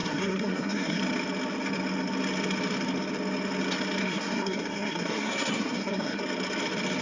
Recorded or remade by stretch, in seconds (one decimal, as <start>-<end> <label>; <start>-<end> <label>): 0.0-1.0 remade; 1.0-4.0 recorded; 4.0-6.2 remade; 6.2-7.0 recorded